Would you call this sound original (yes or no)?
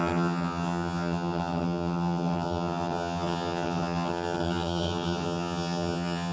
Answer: no